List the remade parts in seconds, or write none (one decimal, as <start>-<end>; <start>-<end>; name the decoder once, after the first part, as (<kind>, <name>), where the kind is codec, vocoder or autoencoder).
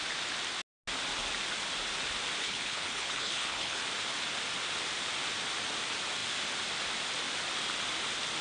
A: 2.4-3.8 (codec, HILCodec)